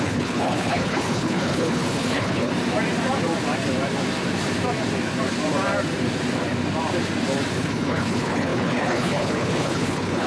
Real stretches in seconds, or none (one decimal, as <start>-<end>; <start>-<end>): 2.5-7.6